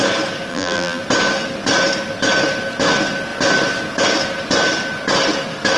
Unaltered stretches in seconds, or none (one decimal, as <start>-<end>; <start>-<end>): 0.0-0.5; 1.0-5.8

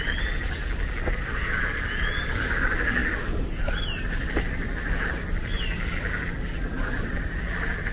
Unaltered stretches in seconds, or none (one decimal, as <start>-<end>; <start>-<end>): 0.0-0.6; 1.4-3.0; 3.7-7.9

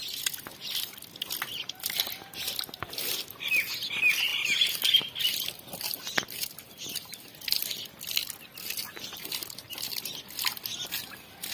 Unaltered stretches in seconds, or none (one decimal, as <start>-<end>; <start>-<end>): 0.0-11.5

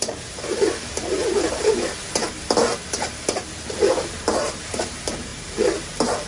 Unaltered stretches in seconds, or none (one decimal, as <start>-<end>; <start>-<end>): 1.2-4.2

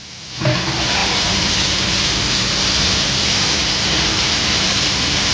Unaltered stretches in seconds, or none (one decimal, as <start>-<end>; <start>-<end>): 0.0-3.6